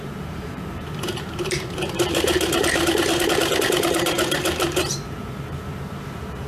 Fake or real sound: fake